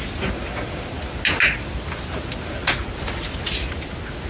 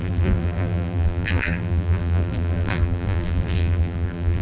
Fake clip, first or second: second